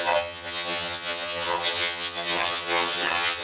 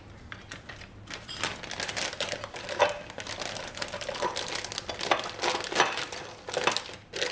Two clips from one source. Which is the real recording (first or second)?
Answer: second